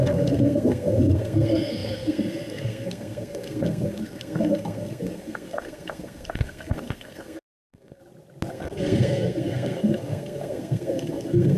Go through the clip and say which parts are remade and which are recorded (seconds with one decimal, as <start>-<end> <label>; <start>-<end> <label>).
0.0-8.0 remade; 8.0-8.5 recorded; 8.5-11.6 remade